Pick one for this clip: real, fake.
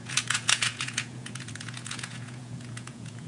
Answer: fake